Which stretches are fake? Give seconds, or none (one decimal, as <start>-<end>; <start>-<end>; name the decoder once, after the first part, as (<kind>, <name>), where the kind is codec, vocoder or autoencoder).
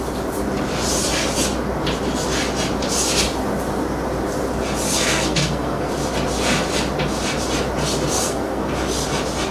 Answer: 4.9-5.9 (codec, SNAC); 8.1-8.7